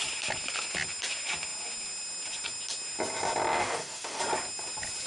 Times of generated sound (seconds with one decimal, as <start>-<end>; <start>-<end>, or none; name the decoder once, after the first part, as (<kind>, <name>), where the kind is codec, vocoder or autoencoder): 3.6-4.2 (codec, DAC)